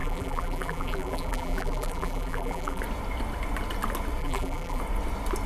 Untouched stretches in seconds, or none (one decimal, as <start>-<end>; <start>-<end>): 2.8-4.2; 4.8-5.5